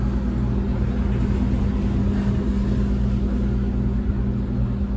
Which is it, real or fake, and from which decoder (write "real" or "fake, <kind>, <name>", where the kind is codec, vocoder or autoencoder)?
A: real